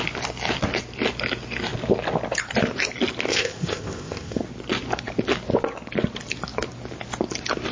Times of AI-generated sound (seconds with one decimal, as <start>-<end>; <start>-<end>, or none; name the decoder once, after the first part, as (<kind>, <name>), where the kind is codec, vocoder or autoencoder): 3.3-4.4 (codec, ZipCodec)